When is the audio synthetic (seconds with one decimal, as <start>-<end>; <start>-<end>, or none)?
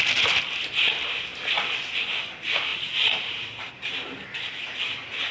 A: 2.7-3.7